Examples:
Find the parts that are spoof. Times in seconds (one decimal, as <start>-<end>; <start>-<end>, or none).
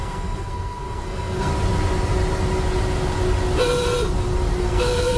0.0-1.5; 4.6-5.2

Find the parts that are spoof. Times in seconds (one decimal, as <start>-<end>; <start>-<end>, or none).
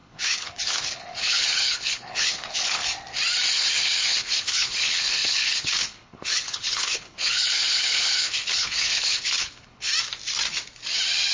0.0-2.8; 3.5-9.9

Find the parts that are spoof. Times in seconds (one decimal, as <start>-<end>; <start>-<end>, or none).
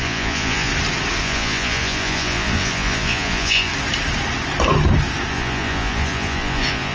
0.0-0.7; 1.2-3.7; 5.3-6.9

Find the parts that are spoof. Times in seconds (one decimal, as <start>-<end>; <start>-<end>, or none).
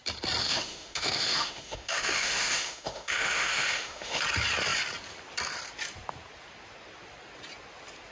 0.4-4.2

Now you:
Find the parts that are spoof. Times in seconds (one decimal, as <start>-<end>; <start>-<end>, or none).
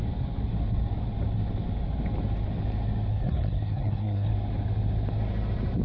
3.1-4.3